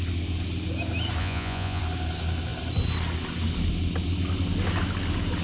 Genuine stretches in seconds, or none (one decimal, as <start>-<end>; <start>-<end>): 0.0-1.2; 1.8-5.4